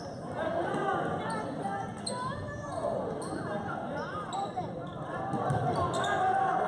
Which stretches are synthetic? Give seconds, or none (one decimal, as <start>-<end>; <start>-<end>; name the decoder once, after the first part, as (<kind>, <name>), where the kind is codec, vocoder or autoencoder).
none